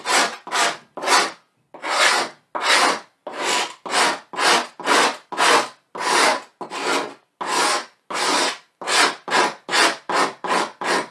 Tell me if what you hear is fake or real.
real